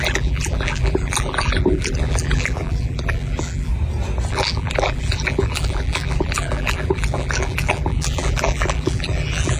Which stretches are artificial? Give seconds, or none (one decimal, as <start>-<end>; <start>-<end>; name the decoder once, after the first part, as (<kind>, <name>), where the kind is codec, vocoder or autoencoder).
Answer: 0.0-3.7 (vocoder, BigVGAN v2); 4.3-9.6